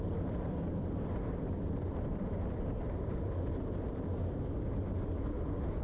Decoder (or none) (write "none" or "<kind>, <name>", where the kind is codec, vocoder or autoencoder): vocoder, BigVGAN v2